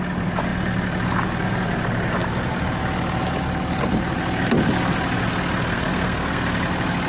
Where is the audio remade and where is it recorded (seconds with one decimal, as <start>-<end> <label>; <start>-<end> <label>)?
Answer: 0.0-5.7 recorded; 5.7-6.5 remade; 6.5-7.1 recorded